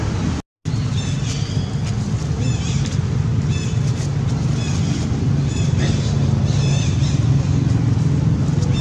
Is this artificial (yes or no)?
no